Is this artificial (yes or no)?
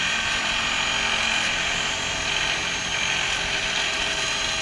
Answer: no